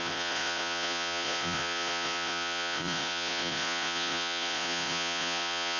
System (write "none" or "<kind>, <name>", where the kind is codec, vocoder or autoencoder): vocoder, Vocos